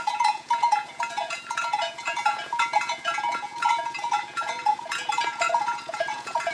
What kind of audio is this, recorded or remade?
remade